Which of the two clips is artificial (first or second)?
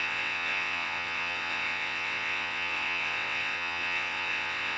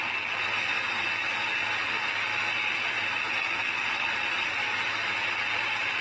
first